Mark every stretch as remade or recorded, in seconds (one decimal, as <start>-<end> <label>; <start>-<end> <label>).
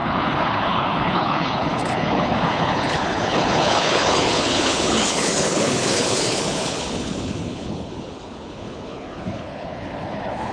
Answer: 0.0-10.5 remade